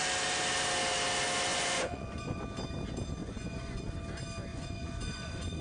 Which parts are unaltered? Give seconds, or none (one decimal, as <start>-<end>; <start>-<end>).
0.0-1.5; 2.4-3.2; 3.8-4.5